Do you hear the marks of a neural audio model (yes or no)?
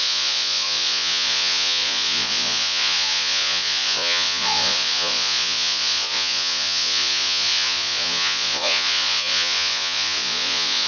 yes